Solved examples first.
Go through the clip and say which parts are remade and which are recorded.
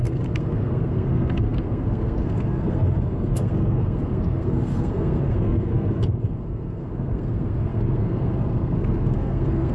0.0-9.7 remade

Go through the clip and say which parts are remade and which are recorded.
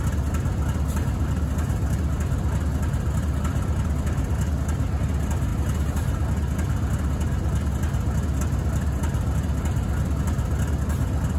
0.0-11.4 recorded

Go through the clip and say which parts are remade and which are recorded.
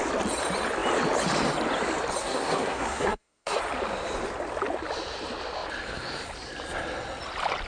0.0-2.2 recorded; 2.2-3.6 remade; 3.6-7.7 recorded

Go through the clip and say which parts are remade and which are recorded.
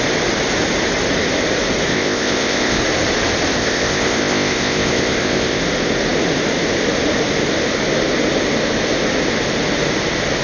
0.0-1.9 recorded; 1.9-2.8 remade; 2.8-3.6 recorded; 3.6-5.6 remade; 5.6-10.4 recorded